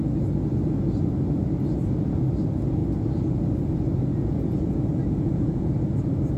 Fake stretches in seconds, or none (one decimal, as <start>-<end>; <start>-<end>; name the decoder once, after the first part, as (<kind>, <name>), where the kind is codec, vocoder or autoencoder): 4.1-5.7 (vocoder, Vocos)